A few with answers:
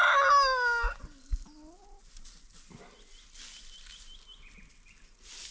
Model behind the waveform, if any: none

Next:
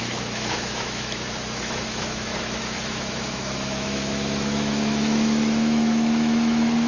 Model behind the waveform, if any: autoencoder, DAC-VAE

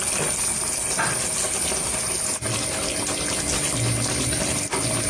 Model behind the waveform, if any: none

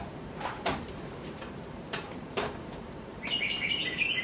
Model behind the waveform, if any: vocoder, BigVGAN v2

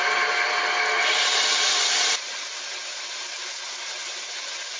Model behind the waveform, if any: none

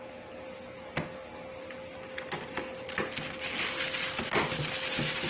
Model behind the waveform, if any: none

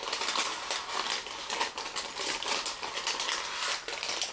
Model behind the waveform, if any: none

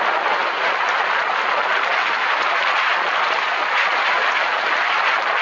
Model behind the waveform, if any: none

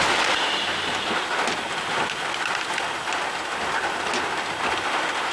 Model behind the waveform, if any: none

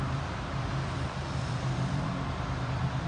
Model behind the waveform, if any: vocoder, BigVGAN v2